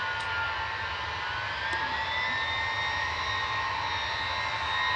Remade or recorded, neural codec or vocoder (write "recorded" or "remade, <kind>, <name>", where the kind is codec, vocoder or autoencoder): recorded